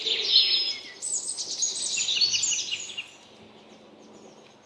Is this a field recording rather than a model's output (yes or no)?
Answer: yes